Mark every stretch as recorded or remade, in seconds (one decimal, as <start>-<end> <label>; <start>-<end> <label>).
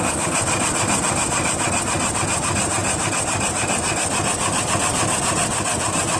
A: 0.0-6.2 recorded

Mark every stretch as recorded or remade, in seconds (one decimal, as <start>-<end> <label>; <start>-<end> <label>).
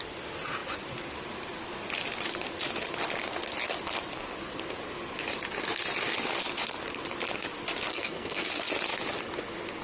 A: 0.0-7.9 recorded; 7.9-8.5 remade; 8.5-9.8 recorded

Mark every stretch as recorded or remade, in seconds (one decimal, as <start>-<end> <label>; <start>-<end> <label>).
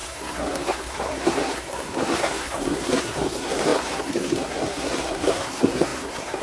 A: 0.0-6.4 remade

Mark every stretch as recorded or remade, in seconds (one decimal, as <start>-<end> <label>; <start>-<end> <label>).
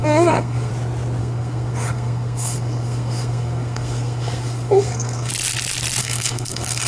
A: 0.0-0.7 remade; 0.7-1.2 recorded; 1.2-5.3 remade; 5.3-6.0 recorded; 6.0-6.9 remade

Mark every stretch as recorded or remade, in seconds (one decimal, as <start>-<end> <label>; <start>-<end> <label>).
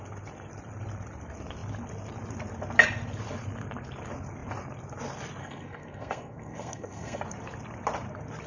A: 0.0-5.4 recorded; 5.4-7.2 remade; 7.2-8.5 recorded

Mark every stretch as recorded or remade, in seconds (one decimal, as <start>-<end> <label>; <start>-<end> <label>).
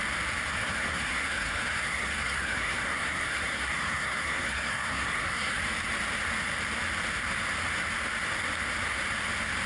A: 0.0-0.5 recorded; 0.5-5.6 remade; 5.6-9.7 recorded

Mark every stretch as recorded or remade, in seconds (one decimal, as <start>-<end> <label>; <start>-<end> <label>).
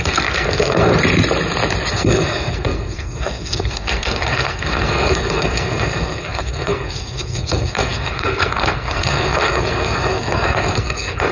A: 0.0-0.9 remade; 0.9-1.9 recorded; 1.9-11.3 remade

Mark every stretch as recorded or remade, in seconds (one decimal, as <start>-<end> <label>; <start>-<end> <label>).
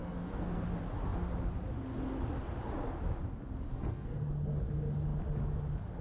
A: 0.0-0.6 remade; 0.6-3.7 recorded; 3.7-4.3 remade; 4.3-6.0 recorded